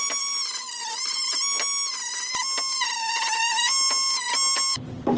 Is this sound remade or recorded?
recorded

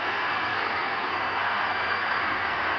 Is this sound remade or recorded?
remade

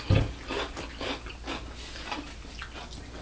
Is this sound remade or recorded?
recorded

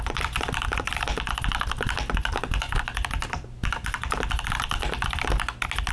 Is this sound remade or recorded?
recorded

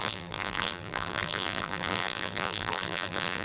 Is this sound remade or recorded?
remade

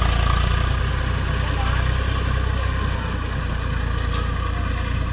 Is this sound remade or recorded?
recorded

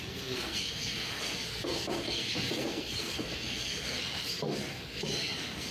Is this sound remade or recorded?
remade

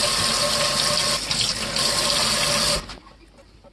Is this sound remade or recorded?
recorded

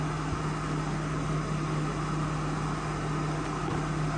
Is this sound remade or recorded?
recorded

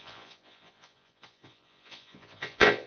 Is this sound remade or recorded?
remade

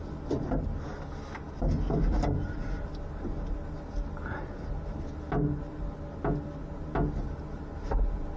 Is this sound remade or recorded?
recorded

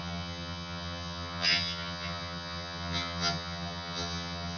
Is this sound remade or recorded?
remade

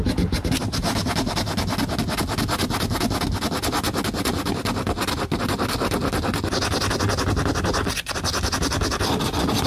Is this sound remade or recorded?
recorded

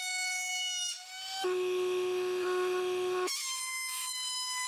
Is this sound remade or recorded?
remade